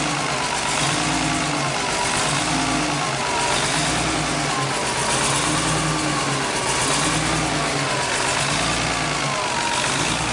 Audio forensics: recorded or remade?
recorded